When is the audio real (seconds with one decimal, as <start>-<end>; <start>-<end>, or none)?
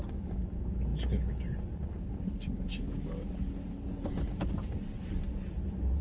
0.0-6.0